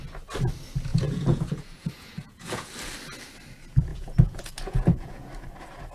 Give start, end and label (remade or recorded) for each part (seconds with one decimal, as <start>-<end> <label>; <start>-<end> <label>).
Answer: 0.0-0.9 recorded; 0.9-2.7 remade; 2.7-3.9 recorded; 3.9-5.3 remade; 5.3-5.9 recorded